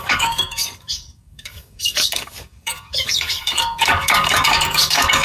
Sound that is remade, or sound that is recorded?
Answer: remade